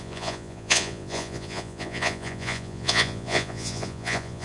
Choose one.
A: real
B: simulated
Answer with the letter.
B